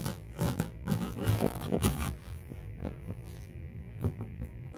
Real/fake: fake